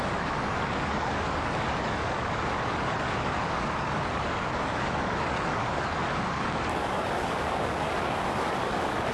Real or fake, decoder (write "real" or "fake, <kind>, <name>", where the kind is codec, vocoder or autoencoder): fake, codec, DAC